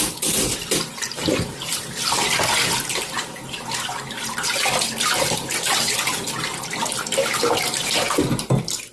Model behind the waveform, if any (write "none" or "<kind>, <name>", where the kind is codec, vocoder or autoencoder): none